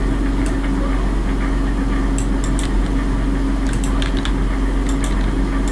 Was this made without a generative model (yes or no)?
yes